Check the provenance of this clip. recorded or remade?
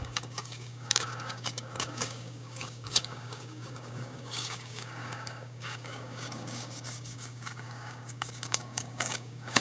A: remade